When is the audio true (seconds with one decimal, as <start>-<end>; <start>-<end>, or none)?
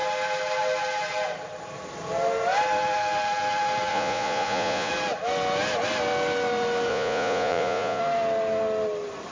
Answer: 0.0-3.9; 4.9-6.9; 8.0-9.3